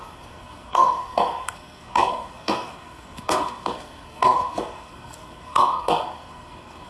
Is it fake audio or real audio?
fake